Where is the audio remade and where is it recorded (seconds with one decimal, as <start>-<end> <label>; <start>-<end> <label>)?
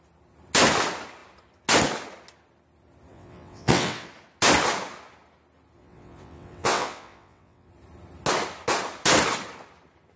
0.0-3.1 recorded; 3.1-4.1 remade; 4.1-5.8 recorded; 5.8-7.7 remade; 7.7-10.2 recorded